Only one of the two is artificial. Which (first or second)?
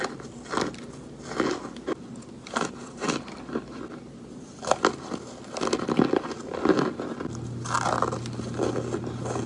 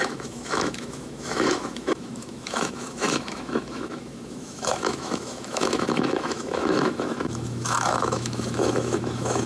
second